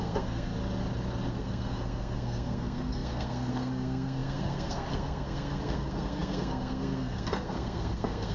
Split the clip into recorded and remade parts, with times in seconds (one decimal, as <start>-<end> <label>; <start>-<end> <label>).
0.0-0.5 remade; 0.5-1.3 recorded; 1.3-8.3 remade